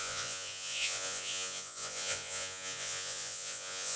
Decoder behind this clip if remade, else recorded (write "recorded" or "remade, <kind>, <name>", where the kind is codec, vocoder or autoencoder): remade, vocoder, Vocos